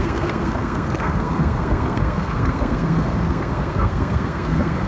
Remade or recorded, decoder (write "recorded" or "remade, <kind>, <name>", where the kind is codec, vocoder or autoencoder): remade, codec, SNAC